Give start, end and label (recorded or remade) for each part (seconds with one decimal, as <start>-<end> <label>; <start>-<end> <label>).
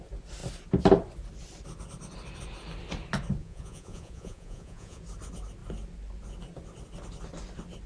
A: 0.0-3.4 recorded; 3.4-5.0 remade; 5.0-7.9 recorded